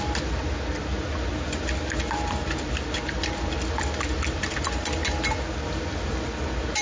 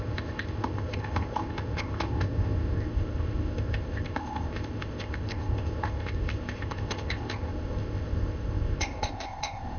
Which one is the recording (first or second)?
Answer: first